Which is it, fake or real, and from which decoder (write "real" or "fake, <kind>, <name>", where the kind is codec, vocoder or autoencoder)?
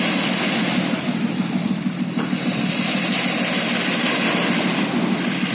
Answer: real